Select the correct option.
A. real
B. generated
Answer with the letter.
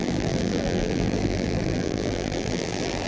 B